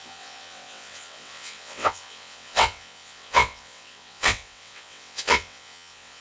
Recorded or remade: remade